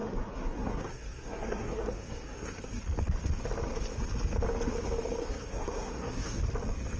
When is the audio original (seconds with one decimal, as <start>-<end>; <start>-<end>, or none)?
2.8-5.2; 6.4-7.0